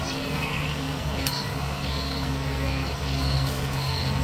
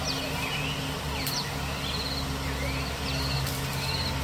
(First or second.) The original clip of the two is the second